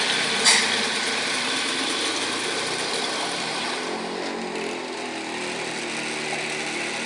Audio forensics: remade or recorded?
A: recorded